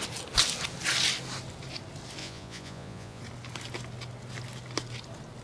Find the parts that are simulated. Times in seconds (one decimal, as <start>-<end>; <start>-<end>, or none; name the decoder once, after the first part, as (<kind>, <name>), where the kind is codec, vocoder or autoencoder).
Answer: 2.2-3.2 (vocoder, Vocos)